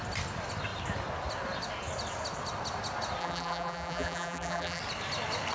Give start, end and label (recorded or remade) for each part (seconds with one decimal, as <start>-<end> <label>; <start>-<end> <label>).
0.0-3.2 recorded; 3.2-4.8 remade; 4.8-5.5 recorded